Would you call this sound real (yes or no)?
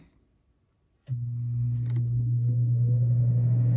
yes